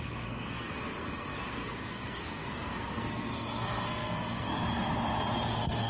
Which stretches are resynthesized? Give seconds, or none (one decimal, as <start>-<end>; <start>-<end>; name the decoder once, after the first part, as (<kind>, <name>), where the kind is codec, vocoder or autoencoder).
0.0-4.5 (codec, SNAC); 5.5-5.9